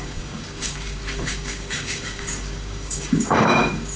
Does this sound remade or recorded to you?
remade